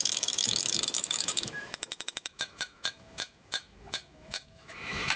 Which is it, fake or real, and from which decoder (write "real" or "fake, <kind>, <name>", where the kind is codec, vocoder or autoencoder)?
fake, autoencoder, DAC-VAE